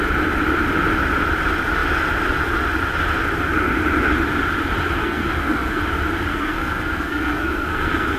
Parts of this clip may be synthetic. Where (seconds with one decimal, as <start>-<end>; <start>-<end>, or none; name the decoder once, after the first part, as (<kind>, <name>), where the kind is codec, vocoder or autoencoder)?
5.0-5.8 (codec, SNAC); 6.3-8.2